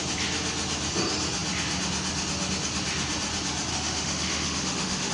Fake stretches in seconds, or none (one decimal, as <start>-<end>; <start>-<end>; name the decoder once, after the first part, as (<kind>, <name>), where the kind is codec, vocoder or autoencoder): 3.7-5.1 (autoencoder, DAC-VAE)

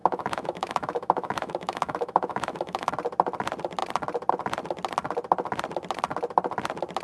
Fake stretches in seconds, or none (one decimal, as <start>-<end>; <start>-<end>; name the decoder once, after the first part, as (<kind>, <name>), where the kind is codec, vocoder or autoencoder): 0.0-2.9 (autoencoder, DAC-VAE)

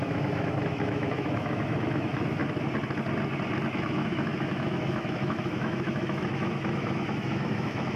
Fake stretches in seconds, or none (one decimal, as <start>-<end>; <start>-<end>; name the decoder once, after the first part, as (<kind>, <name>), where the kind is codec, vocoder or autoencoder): 0.0-2.4 (autoencoder, DAC-VAE); 3.7-8.0